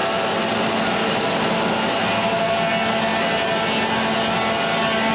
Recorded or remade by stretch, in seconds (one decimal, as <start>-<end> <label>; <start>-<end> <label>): 0.0-5.1 recorded

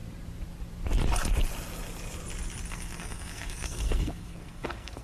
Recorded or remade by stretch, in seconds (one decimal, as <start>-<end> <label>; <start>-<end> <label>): 0.0-2.7 recorded; 2.7-5.0 remade

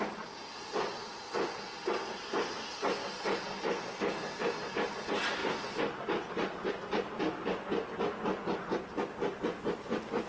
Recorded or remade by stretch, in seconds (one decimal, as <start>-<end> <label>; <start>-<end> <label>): 0.0-10.3 recorded

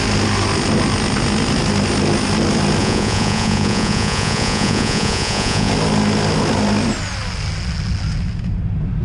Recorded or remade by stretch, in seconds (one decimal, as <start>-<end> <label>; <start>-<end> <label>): 0.0-2.8 recorded; 2.8-5.7 remade; 5.7-9.0 recorded

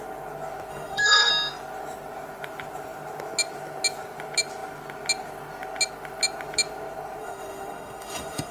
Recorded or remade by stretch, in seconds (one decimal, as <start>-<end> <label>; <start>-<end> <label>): 0.0-0.7 recorded; 0.7-1.3 remade; 1.3-7.2 recorded; 7.2-8.5 remade

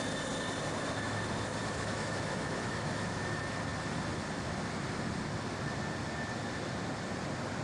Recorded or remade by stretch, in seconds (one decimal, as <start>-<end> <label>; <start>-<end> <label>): 0.0-1.6 recorded; 1.6-3.2 remade; 3.2-7.6 recorded